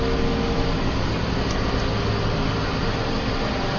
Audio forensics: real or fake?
real